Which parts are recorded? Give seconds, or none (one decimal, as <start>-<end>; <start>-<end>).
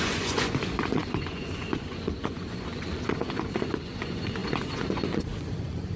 none